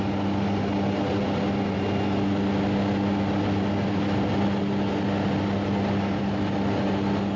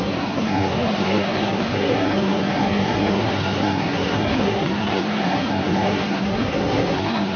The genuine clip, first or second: first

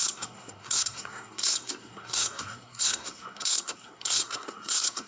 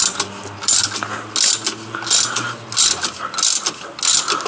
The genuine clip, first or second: second